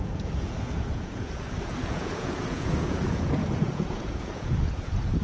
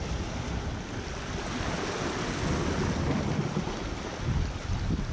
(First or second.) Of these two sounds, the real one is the second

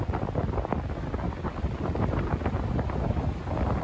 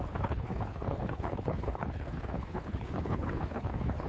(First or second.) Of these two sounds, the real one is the first